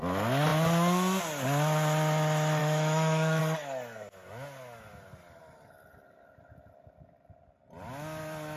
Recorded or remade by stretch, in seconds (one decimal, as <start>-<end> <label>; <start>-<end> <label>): 0.0-2.6 recorded; 2.6-3.4 remade; 3.4-8.6 recorded